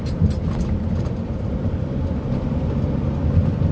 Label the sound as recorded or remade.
remade